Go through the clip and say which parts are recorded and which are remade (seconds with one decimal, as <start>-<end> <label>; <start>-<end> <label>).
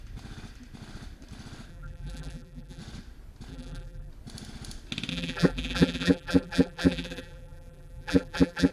0.0-1.7 recorded; 1.7-2.8 remade; 2.8-3.5 recorded; 3.5-4.1 remade; 4.1-5.1 recorded; 5.1-8.7 remade